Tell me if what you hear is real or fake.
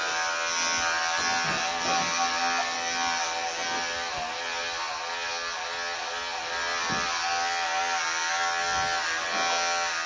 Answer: real